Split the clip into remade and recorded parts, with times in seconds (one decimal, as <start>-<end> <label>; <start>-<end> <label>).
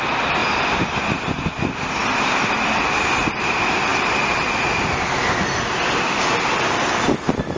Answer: 0.0-7.6 recorded